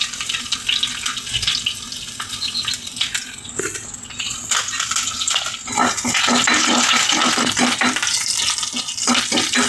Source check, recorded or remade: recorded